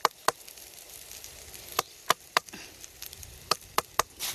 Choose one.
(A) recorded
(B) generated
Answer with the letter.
B